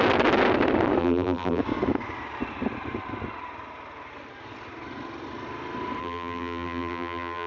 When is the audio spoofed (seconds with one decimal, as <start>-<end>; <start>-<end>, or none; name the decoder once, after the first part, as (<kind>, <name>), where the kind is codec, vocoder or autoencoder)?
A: 1.0-1.6 (vocoder, BigVGAN v2); 6.0-7.5